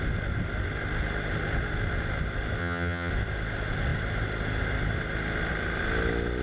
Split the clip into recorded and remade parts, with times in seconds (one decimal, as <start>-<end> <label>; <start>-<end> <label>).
0.0-2.6 recorded; 2.6-3.1 remade; 3.1-6.4 recorded